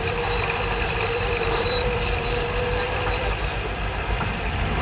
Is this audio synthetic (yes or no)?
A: yes